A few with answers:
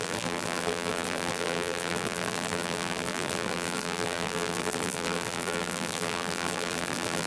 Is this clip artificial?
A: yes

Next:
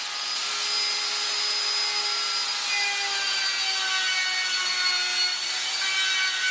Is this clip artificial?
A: no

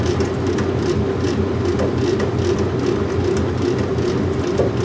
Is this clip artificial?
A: no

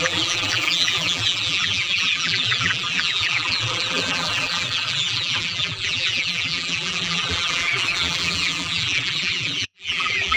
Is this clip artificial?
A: yes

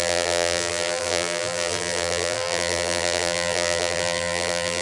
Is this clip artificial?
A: yes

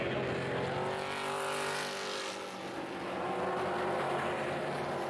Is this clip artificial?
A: no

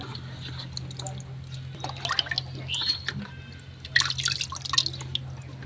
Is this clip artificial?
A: no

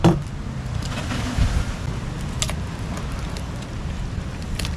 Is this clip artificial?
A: no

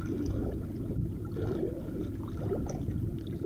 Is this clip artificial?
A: yes